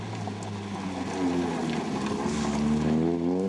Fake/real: real